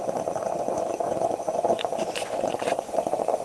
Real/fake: fake